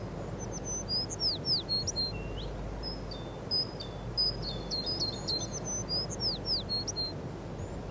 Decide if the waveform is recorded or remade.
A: recorded